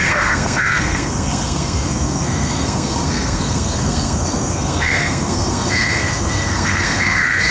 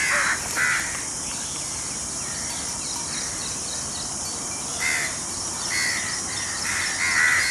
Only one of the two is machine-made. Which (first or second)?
first